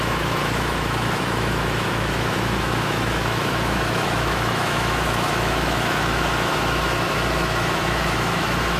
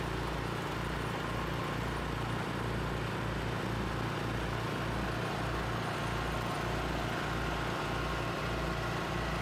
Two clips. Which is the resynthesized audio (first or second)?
first